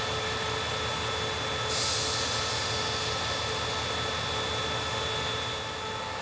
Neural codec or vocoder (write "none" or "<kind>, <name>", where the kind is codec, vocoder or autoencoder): none